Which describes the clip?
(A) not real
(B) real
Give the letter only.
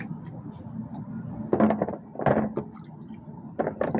B